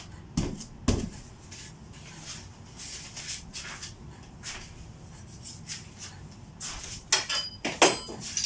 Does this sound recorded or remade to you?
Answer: recorded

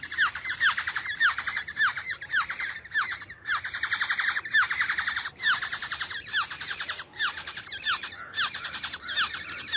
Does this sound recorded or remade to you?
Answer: remade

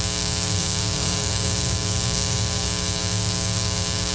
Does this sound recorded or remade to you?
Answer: remade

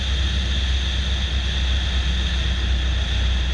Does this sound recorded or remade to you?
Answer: recorded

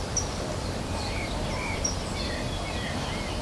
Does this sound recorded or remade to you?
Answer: remade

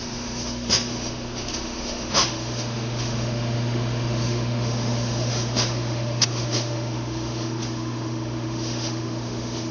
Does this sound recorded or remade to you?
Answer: remade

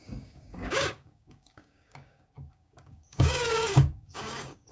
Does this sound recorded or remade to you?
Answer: remade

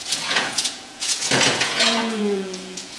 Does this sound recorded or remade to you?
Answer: remade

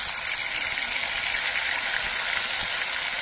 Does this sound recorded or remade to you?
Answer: recorded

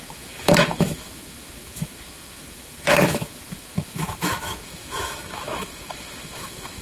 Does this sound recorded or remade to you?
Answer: remade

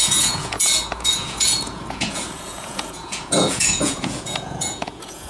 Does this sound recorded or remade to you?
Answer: remade